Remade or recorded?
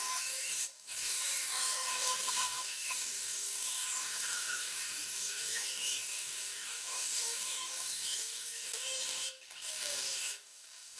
remade